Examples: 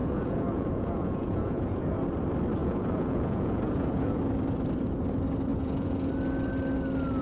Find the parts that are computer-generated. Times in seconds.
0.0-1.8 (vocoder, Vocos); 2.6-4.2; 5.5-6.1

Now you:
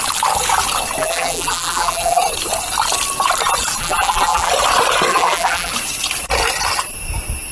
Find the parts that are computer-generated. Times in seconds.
1.0-2.2 (vocoder, BigVGAN v2); 3.8-4.5; 5.1-5.7

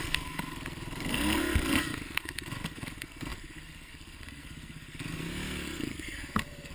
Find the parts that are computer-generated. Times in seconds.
0.0-6.7 (codec, SNAC)